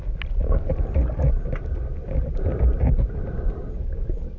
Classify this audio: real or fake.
real